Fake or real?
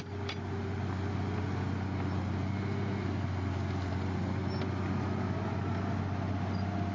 real